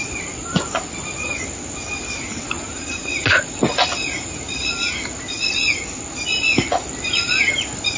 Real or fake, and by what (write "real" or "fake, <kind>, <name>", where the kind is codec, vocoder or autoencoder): real